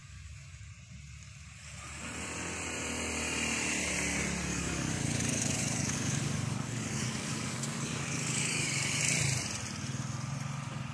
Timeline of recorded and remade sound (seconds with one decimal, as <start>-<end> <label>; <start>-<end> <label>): 0.0-0.6 remade; 0.6-4.5 recorded; 4.5-9.0 remade; 9.0-10.9 recorded